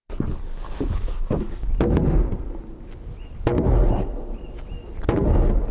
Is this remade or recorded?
recorded